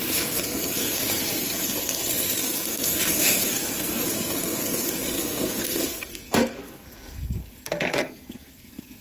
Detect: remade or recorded remade